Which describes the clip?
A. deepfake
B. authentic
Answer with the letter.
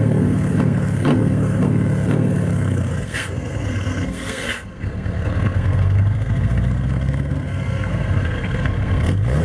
A